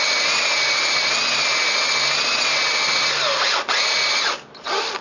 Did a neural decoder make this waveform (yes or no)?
no